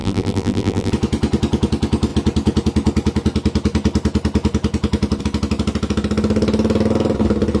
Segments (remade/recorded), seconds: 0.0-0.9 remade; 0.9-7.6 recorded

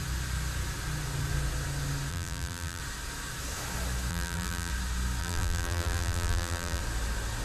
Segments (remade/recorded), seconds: 0.0-2.1 recorded; 2.1-2.8 remade; 2.8-4.1 recorded; 4.1-4.7 remade; 4.7-5.2 recorded; 5.2-6.8 remade; 6.8-7.4 recorded

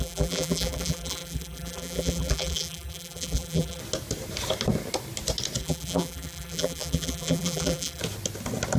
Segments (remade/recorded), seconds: 0.0-3.8 remade; 3.8-5.6 recorded; 5.6-8.0 remade; 8.0-8.8 recorded

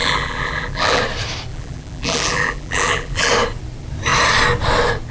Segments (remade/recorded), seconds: 0.0-1.0 remade; 1.0-1.5 recorded; 1.5-3.3 remade; 3.3-5.1 recorded